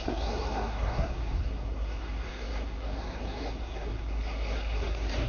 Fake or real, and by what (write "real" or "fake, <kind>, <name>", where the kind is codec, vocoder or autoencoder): fake, codec, SNAC